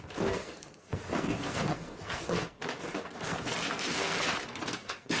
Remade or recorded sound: remade